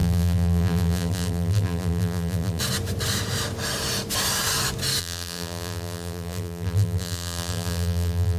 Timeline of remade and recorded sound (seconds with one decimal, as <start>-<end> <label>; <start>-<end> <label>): 0.0-2.6 remade; 2.6-5.0 recorded; 5.0-8.4 remade